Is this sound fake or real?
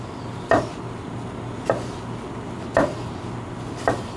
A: real